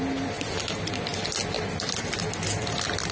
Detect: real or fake real